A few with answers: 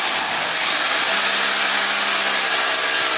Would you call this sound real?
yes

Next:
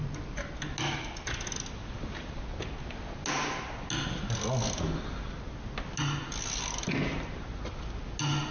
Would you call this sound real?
yes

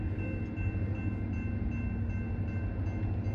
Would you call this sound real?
yes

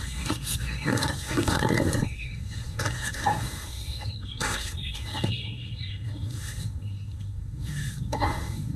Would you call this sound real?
no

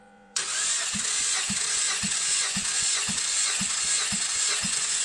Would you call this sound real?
no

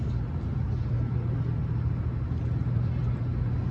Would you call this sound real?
yes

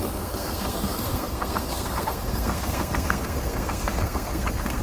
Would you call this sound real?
no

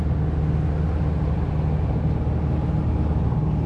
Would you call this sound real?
yes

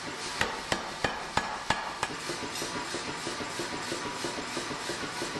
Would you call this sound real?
yes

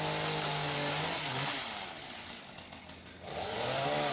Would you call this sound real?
yes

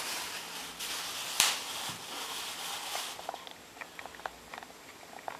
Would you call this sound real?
yes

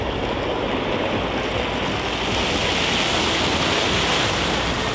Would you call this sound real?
yes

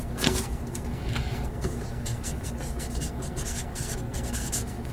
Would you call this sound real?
no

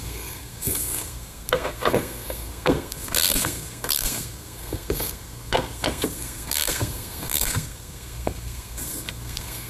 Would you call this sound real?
no